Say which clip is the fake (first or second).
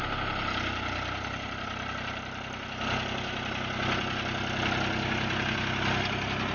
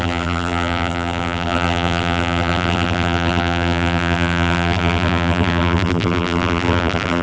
second